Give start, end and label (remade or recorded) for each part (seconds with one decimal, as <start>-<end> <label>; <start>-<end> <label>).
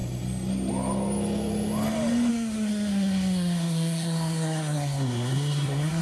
0.0-2.3 recorded; 2.3-6.0 remade